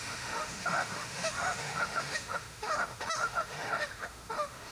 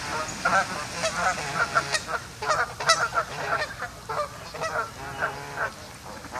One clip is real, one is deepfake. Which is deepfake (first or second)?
first